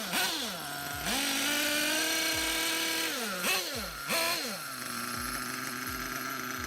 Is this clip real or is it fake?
real